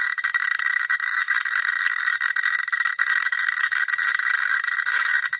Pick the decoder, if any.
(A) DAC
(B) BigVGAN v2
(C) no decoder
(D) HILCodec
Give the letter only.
A